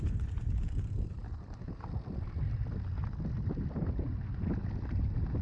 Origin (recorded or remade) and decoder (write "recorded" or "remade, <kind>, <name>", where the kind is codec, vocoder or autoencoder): recorded